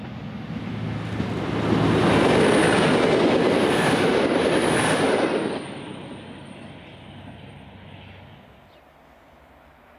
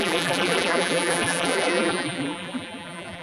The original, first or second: first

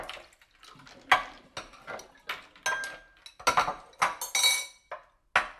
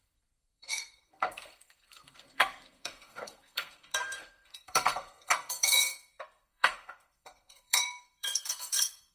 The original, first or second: first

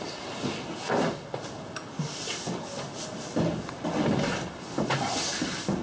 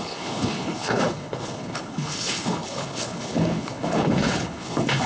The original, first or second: first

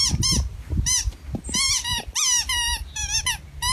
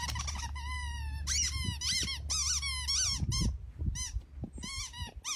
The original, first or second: second